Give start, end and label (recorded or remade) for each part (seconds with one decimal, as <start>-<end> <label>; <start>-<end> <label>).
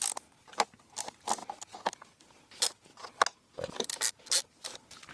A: 0.0-5.1 recorded